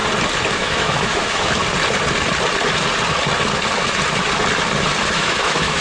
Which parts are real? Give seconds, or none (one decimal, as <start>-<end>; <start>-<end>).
0.0-0.5; 1.6-5.1